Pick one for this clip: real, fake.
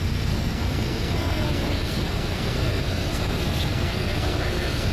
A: fake